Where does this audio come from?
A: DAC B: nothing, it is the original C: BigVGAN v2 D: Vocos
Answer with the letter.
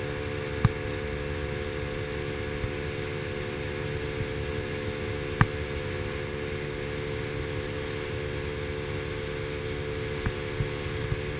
B